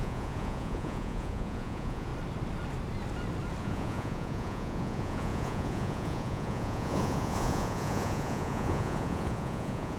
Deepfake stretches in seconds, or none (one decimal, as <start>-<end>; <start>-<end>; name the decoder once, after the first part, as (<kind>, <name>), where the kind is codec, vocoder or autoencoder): 0.0-2.1 (vocoder, Vocos); 3.6-10.0